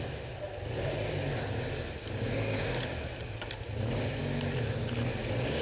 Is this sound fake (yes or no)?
no